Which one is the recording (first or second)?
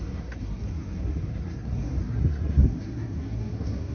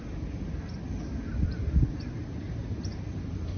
second